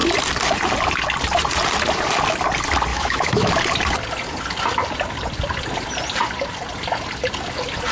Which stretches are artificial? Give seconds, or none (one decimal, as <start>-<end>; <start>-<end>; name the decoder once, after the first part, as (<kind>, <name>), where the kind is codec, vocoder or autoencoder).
2.9-3.5 (autoencoder, DAC-VAE)